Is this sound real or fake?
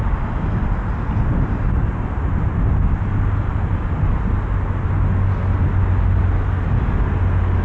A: real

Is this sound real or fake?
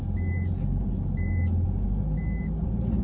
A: real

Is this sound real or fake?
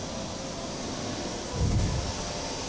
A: real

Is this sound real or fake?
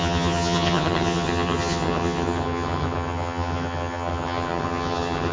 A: fake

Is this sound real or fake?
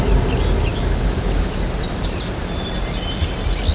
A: real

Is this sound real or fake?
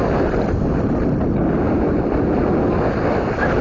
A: real